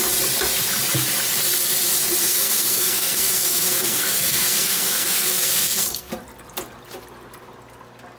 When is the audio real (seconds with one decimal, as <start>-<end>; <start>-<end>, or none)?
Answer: 0.0-2.2; 6.1-8.2